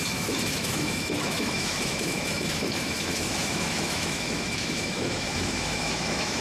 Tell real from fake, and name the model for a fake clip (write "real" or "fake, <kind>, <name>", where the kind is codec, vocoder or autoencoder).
fake, autoencoder, DAC-VAE